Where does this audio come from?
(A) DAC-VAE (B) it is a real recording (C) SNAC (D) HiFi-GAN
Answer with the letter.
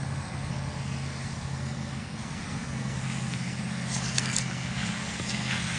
C